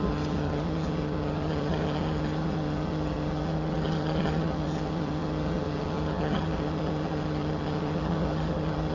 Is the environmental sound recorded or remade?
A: remade